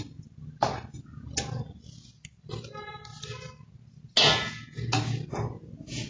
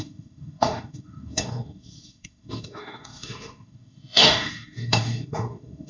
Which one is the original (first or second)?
first